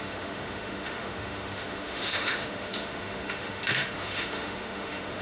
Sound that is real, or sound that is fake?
fake